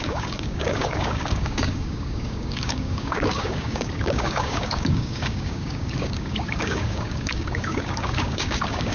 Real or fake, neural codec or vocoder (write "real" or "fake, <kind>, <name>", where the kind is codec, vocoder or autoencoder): fake, codec, DAC